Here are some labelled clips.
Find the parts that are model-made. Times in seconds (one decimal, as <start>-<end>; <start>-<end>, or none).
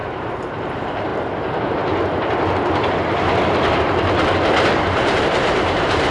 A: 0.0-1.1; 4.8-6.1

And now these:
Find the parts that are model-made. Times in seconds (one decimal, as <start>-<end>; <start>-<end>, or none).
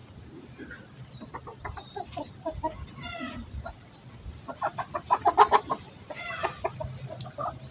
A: none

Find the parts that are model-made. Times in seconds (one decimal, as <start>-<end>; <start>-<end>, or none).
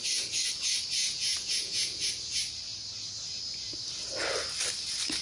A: 1.0-2.0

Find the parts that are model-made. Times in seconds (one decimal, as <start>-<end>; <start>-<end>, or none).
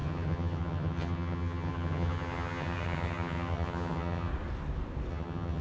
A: 0.0-4.3; 5.1-5.6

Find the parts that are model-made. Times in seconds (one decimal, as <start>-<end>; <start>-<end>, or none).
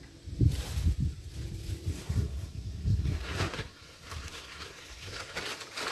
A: 1.9-5.4